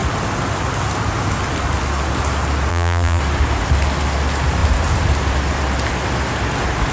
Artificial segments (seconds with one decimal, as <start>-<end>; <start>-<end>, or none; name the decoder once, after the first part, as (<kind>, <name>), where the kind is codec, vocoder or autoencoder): 2.7-3.2 (vocoder, BigVGAN v2)

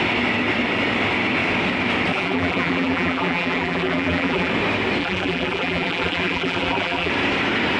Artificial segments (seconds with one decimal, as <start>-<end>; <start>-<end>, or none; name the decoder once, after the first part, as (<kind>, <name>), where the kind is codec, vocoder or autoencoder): 2.1-4.5 (vocoder, BigVGAN v2); 5.0-7.1

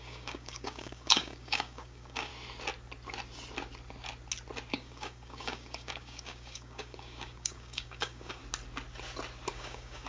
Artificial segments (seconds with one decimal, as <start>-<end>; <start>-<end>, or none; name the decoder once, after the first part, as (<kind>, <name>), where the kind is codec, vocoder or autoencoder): 0.0-2.3 (codec, DAC); 4.7-8.4; 9.5-10.1

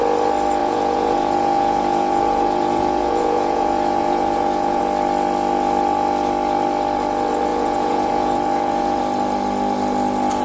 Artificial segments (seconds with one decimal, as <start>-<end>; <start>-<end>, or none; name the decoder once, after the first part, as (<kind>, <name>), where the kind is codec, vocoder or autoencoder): 0.6-4.8 (vocoder, Vocos); 7.5-9.0